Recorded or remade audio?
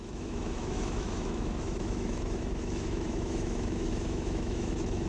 remade